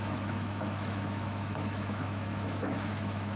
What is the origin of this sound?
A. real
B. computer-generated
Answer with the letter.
B